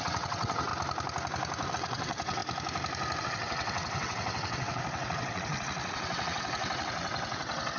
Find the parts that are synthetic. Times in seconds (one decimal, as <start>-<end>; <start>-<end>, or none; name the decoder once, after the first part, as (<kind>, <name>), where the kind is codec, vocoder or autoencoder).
0.0-0.7 (vocoder, WaveNeXt); 1.7-2.4; 3.2-7.8